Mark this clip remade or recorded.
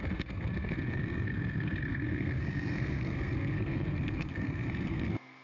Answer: remade